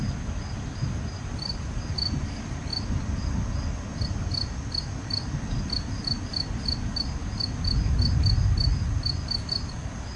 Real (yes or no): yes